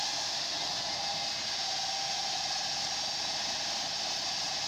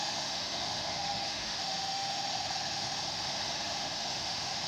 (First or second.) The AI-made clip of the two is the second